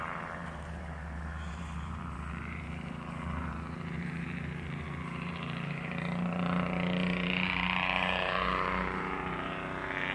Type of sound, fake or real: fake